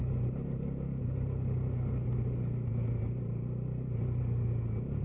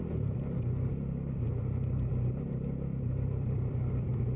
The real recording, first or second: first